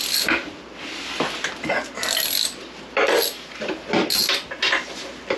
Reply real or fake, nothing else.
real